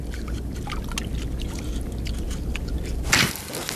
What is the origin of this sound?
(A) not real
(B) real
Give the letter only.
B